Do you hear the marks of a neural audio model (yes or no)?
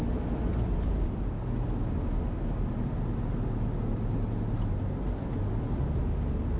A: no